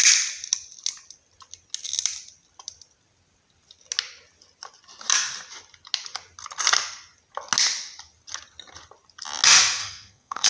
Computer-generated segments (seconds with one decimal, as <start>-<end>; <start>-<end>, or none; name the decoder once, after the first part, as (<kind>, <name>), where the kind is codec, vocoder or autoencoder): 9.8-10.5 (codec, SNAC)